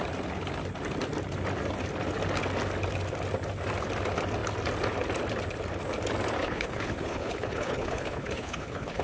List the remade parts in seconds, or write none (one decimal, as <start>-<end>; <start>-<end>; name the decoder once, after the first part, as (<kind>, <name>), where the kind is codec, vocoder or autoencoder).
6.4-9.0 (codec, HILCodec)